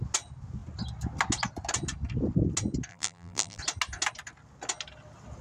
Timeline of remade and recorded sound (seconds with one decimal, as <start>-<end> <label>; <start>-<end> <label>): 0.0-2.9 recorded; 2.9-3.6 remade; 3.6-5.4 recorded